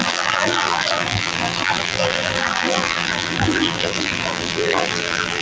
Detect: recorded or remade remade